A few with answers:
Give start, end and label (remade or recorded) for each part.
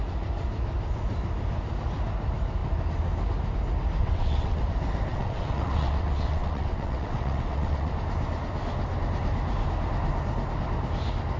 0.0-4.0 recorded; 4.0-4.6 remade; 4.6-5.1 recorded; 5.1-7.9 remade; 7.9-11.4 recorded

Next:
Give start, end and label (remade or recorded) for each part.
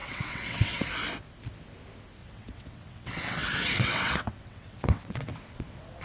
0.0-0.9 remade; 0.9-2.2 recorded; 2.2-6.0 remade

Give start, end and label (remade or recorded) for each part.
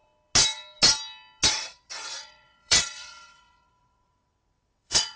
0.0-1.5 recorded; 1.5-5.2 remade